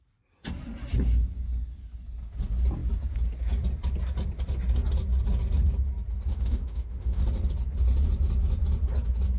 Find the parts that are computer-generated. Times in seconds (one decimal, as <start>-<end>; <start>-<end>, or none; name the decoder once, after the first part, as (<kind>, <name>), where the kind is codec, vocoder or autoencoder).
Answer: 6.3-7.2 (autoencoder, DAC-VAE)